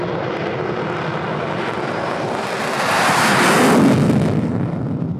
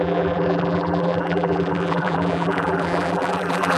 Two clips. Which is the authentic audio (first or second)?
first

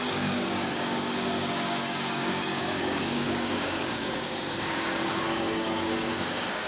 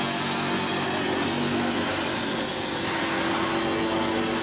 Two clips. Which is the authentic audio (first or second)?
second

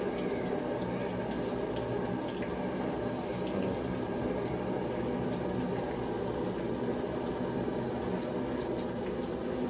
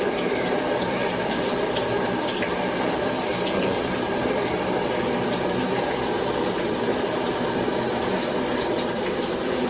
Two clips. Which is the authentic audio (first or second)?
first